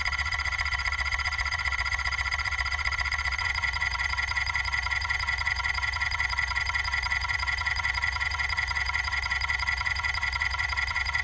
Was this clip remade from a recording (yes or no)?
yes